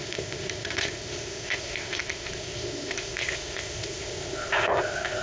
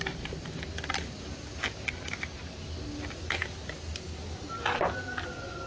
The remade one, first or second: first